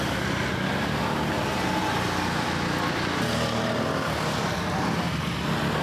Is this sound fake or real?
real